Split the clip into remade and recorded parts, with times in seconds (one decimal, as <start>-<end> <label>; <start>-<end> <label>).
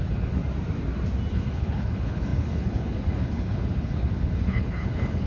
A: 0.0-0.4 remade; 0.4-1.3 recorded; 1.3-5.3 remade